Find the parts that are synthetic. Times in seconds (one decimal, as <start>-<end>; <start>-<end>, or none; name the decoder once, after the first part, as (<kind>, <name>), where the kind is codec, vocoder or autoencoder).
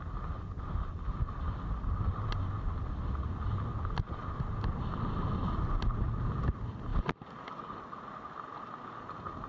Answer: none